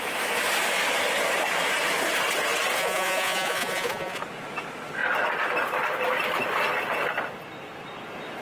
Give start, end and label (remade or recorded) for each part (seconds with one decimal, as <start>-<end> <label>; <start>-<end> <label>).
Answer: 0.0-2.8 recorded; 2.8-4.2 remade; 4.2-8.4 recorded

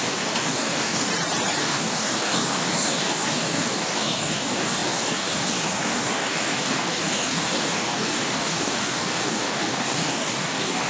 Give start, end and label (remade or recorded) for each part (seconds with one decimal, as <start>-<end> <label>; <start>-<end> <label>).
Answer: 0.0-1.1 remade; 1.1-1.6 recorded; 1.6-10.9 remade